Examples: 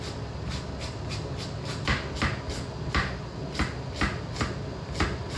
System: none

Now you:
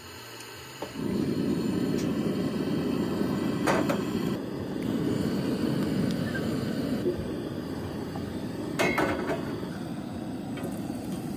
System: none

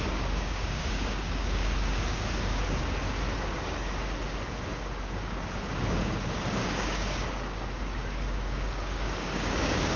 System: codec, DAC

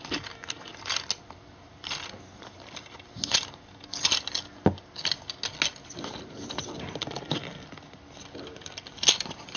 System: none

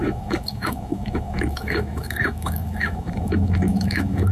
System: autoencoder, DAC-VAE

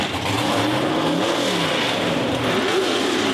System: none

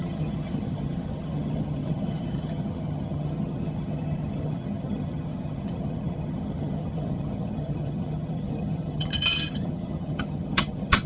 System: vocoder, HiFi-GAN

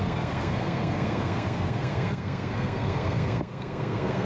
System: codec, SNAC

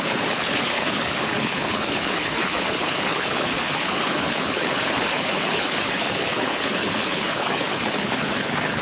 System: codec, HILCodec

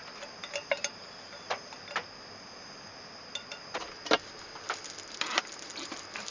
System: none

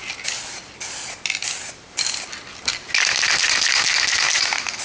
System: none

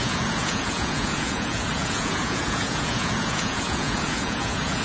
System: vocoder, Vocos